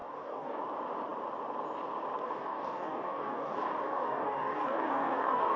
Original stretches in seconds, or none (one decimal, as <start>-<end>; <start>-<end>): 0.6-2.2

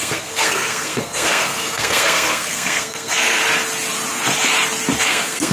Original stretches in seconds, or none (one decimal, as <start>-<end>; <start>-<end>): 3.4-5.0

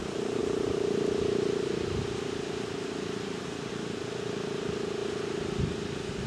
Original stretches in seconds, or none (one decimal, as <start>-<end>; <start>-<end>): 0.0-6.3